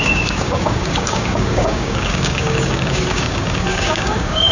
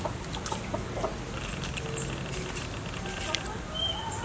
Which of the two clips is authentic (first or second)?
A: second